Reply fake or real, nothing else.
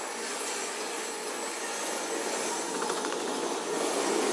fake